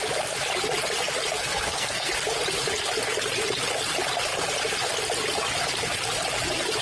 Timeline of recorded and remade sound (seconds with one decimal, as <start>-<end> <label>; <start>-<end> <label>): 0.0-1.3 recorded; 1.3-2.1 remade; 2.1-6.8 recorded